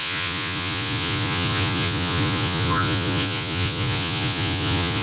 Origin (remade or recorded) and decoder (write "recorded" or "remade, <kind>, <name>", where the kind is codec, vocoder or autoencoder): remade, vocoder, Vocos